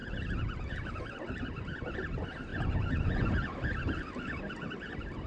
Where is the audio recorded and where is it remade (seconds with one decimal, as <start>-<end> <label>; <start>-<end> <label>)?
0.0-2.5 recorded; 2.5-3.3 remade; 3.3-5.3 recorded